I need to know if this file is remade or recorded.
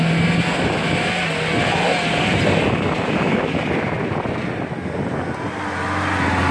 recorded